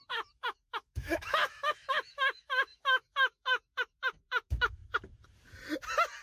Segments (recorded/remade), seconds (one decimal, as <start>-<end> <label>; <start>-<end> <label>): 0.0-4.8 remade; 4.8-6.2 recorded